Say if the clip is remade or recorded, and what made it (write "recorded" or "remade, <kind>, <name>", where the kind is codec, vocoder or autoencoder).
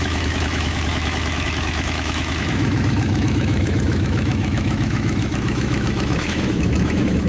remade, autoencoder, DAC-VAE